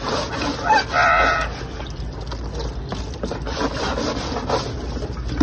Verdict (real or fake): real